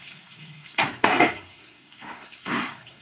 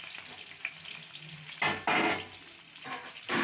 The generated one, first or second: first